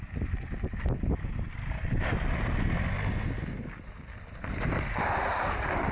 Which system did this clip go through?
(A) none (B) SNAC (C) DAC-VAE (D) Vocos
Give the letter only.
A